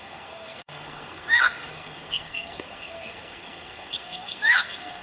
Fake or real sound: fake